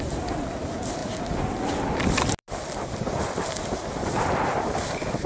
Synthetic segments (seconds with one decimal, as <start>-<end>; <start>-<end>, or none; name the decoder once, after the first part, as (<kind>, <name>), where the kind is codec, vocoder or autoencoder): none